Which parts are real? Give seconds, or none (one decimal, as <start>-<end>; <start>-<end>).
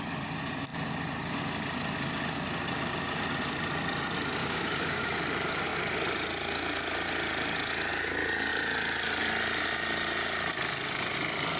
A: 0.0-4.4; 5.2-11.6